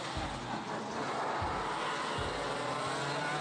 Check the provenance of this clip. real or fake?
real